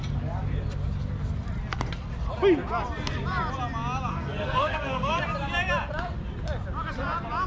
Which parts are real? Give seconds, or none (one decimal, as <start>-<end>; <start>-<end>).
0.0-4.1; 5.2-7.5